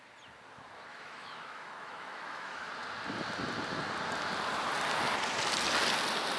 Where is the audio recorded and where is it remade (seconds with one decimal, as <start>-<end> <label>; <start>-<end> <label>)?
0.0-0.9 recorded; 0.9-2.7 remade; 2.7-6.4 recorded